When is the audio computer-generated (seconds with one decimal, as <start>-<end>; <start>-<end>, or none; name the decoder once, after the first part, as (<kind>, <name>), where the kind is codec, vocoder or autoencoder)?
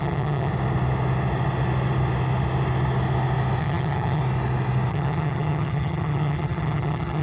0.0-0.5 (vocoder, HiFi-GAN); 3.6-4.2; 4.9-7.2